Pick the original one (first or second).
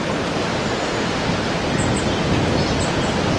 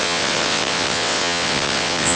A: first